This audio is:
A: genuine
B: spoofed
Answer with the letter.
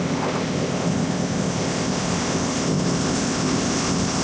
B